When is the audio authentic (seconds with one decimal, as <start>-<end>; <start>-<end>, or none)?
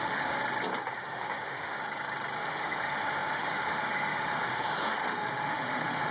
0.4-0.9; 1.8-2.4